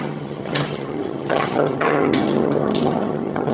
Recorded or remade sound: remade